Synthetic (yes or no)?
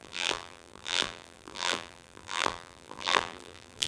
yes